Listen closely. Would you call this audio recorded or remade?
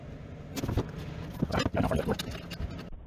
recorded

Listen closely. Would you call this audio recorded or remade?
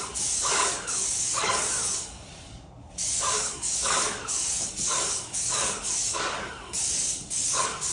remade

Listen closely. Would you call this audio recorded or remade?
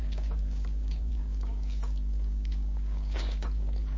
remade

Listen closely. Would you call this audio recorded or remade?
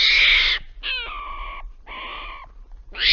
recorded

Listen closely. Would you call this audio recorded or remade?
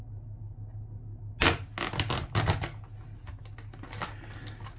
recorded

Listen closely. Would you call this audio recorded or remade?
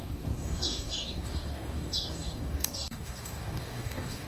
remade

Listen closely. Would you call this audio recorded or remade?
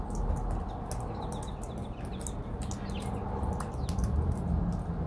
recorded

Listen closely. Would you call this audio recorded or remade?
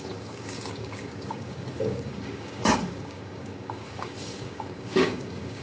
remade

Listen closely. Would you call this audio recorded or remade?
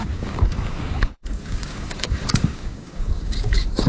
remade